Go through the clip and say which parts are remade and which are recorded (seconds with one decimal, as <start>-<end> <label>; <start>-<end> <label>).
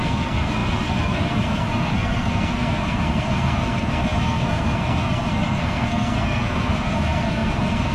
0.0-7.9 remade